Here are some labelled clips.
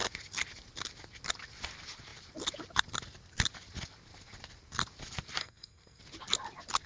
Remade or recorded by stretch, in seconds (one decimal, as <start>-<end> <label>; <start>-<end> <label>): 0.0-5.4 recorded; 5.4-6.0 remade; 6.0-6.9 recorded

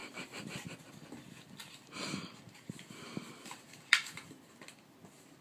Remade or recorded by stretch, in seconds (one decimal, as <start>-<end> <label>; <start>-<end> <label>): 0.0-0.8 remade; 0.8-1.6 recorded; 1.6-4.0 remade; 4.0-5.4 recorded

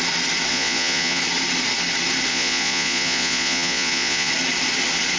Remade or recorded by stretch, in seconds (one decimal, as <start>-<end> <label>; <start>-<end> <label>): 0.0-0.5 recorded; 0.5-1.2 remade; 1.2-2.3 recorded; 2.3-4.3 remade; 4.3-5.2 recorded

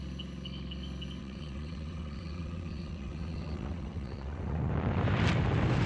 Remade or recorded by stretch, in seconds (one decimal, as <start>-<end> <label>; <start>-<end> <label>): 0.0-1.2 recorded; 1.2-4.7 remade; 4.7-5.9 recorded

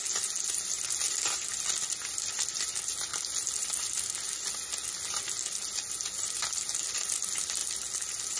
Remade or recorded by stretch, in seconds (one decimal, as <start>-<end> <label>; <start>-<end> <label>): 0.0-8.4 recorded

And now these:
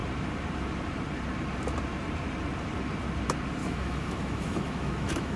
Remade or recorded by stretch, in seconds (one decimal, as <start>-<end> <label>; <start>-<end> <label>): 0.0-3.6 recorded; 3.6-5.4 remade